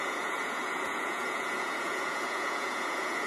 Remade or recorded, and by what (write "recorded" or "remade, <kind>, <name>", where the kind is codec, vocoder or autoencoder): remade, vocoder, Vocos